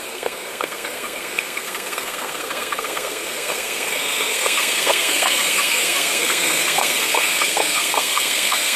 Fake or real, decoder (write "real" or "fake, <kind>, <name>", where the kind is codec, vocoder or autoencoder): fake, codec, SNAC